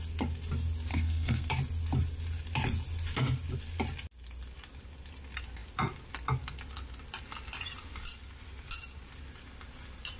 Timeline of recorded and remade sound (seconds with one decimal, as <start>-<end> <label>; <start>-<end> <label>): 0.0-0.9 recorded; 0.9-1.5 remade; 1.5-10.2 recorded

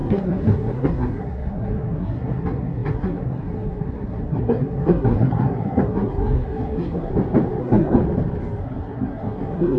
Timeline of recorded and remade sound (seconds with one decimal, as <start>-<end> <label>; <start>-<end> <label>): 0.0-7.1 remade; 7.1-7.6 recorded; 7.6-8.0 remade; 8.0-8.6 recorded; 8.6-9.8 remade

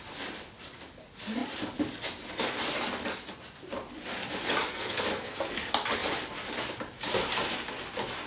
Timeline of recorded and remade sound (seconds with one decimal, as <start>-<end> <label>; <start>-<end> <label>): 0.0-4.7 recorded; 4.7-5.6 remade; 5.6-8.3 recorded

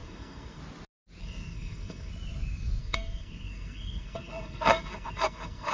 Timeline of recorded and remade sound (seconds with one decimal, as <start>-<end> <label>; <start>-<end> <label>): 0.0-0.6 remade; 0.6-1.2 recorded; 1.2-2.1 remade; 2.1-2.8 recorded; 2.8-5.7 remade

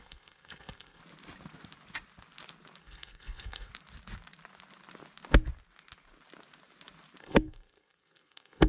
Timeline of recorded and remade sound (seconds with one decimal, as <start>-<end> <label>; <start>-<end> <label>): 0.0-1.0 remade; 1.0-2.8 recorded; 2.8-3.7 remade; 3.7-7.2 recorded; 7.2-8.7 remade